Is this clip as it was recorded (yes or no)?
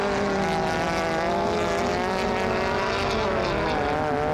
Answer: yes